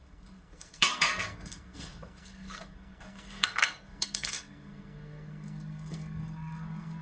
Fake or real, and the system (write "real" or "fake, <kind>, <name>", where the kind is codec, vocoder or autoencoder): fake, codec, SNAC